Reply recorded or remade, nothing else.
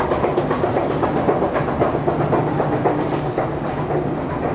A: recorded